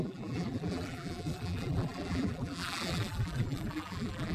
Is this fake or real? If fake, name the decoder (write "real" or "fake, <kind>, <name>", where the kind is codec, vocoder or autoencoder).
fake, vocoder, BigVGAN v2